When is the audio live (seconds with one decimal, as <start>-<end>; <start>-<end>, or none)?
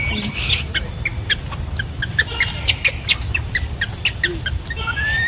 0.0-5.3